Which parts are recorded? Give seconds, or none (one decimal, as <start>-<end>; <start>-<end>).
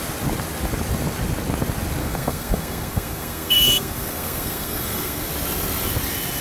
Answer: 0.0-2.0; 5.3-6.4